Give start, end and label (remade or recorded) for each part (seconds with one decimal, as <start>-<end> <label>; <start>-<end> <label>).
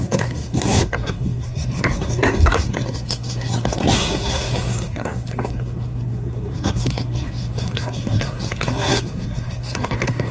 0.0-10.3 remade